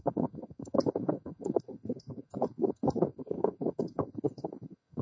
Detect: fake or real fake